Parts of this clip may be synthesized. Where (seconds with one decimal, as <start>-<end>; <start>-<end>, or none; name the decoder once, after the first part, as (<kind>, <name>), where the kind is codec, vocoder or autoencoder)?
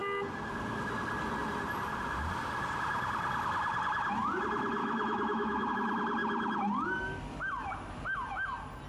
4.8-5.7 (autoencoder, DAC-VAE)